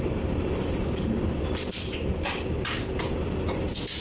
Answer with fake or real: real